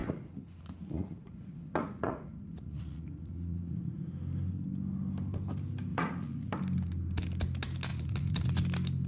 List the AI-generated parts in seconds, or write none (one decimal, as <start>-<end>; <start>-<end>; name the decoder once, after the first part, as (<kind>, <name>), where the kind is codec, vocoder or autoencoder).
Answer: 0.0-4.0 (vocoder, Vocos); 5.9-6.5; 7.9-8.6